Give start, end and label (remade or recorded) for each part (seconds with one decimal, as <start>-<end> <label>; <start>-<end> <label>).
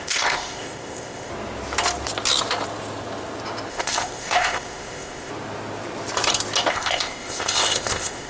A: 0.0-1.3 remade; 1.3-3.7 recorded; 3.7-5.3 remade; 5.3-6.7 recorded; 6.7-8.3 remade